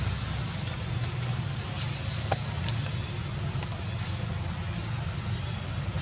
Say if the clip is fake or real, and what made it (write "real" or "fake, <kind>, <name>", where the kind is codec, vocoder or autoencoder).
real